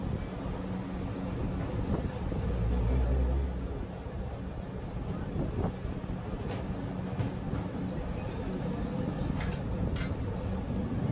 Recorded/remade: recorded